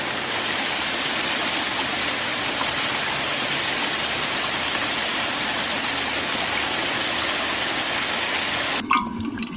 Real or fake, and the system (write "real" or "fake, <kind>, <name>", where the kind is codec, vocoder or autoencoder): real